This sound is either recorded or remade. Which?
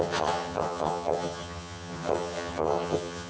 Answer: remade